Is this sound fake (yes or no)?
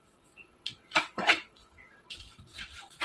yes